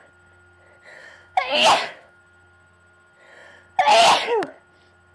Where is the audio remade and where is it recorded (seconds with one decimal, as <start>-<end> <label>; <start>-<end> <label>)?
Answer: 0.0-1.0 recorded; 1.0-2.2 remade; 2.2-5.1 recorded